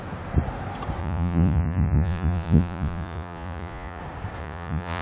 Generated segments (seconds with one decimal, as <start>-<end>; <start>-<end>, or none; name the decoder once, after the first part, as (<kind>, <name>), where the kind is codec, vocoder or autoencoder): 1.0-4.0 (vocoder, Vocos); 4.4-5.0